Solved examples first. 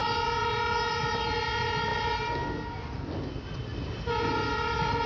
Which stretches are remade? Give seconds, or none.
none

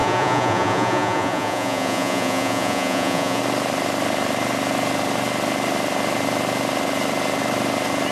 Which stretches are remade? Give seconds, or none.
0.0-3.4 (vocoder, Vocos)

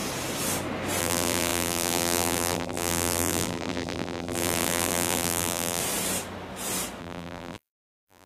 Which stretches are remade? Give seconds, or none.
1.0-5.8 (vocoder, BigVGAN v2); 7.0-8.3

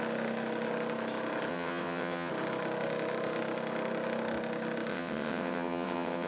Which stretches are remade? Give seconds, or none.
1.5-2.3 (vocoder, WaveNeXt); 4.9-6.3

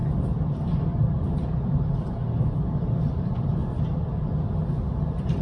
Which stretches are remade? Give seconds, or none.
0.0-2.2 (vocoder, BigVGAN v2); 3.1-3.6; 4.8-5.4